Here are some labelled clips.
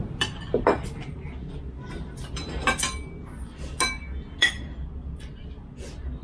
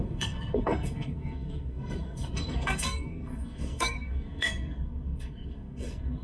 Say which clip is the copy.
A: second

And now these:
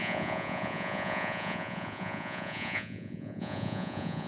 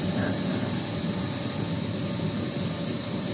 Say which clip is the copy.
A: first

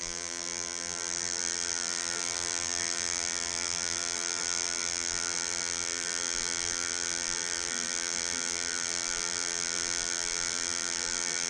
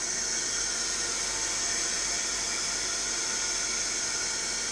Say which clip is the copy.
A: first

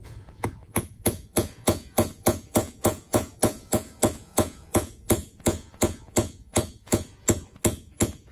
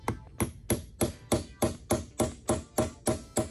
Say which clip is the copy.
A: first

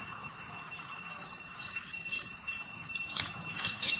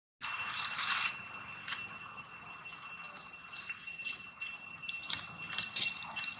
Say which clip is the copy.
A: first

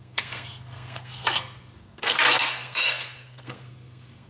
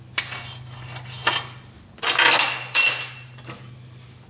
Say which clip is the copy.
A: first